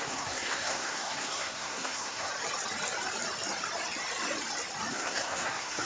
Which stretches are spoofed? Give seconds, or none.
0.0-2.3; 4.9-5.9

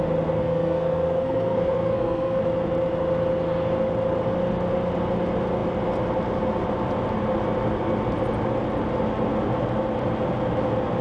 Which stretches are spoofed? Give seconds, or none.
0.4-2.4

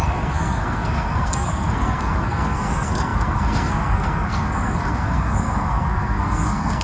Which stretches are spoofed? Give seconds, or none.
0.0-6.8

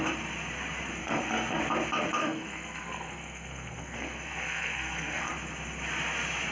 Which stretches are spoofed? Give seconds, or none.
1.0-1.6; 2.2-5.3